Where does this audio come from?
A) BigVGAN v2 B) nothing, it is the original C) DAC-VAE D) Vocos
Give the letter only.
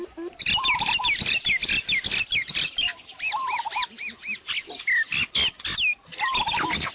B